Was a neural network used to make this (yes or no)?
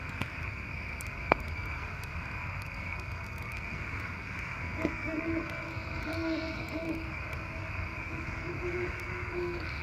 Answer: yes